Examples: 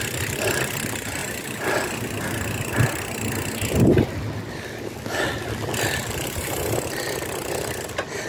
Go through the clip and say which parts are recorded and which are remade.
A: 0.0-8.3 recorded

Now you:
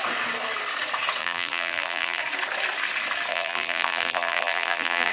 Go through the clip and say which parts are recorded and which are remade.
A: 0.0-1.2 recorded; 1.2-2.2 remade; 2.2-3.3 recorded; 3.3-5.1 remade

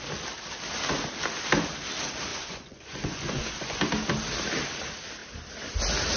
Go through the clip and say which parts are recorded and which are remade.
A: 0.0-2.3 recorded; 2.3-3.8 remade; 3.8-6.2 recorded

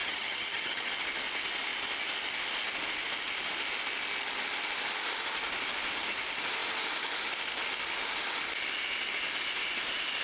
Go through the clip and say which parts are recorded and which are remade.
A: 0.0-0.9 remade; 0.9-10.2 recorded

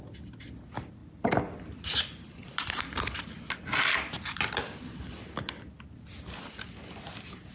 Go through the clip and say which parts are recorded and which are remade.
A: 0.0-7.5 recorded

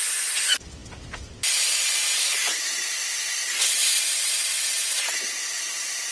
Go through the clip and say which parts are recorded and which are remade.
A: 0.0-6.1 recorded

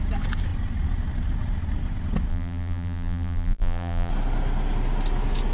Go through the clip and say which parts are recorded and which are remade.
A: 0.0-2.3 recorded; 2.3-4.1 remade; 4.1-5.5 recorded

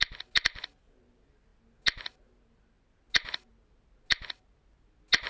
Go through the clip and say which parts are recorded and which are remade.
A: 0.0-5.3 recorded